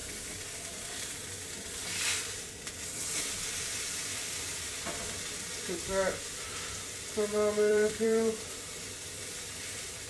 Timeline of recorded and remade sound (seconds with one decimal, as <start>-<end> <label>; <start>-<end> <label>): 0.0-4.7 remade; 4.7-7.7 recorded; 7.7-10.1 remade